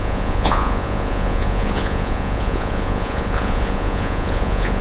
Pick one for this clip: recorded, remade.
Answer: remade